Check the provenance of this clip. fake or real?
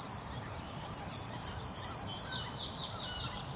fake